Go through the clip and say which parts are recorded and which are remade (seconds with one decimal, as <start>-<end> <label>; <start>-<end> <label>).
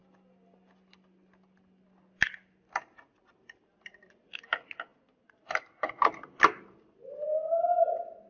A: 0.0-8.3 recorded